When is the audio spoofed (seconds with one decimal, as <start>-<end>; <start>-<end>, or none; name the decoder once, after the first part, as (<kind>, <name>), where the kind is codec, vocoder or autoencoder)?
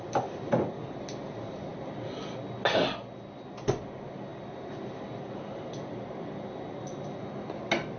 none